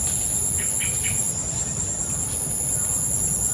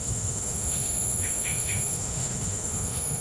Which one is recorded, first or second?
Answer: first